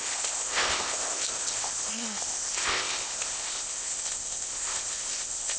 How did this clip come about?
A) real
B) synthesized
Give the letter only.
B